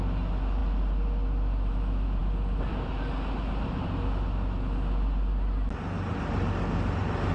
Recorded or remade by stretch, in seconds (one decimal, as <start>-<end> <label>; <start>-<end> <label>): 0.0-7.3 recorded